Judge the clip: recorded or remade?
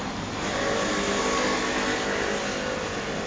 recorded